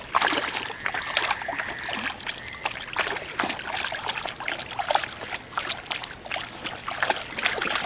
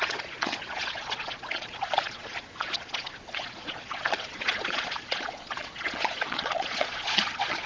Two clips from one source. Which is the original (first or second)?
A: first